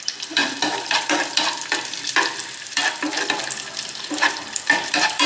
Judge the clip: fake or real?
fake